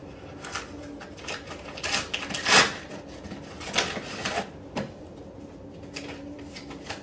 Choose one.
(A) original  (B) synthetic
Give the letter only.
A